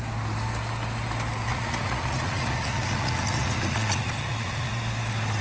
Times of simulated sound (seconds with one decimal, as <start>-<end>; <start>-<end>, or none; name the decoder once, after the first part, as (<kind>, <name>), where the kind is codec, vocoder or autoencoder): 1.5-4.7 (vocoder, Vocos)